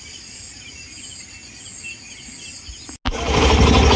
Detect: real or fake real